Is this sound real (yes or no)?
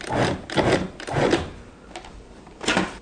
yes